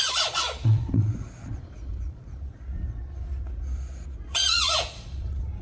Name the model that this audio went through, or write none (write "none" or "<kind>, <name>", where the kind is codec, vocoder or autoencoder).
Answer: vocoder, Vocos